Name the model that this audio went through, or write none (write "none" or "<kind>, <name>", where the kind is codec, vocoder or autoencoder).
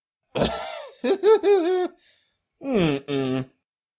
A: none